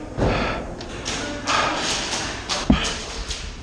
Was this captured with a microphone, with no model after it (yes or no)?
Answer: yes